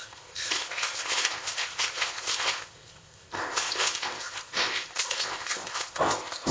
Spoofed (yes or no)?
yes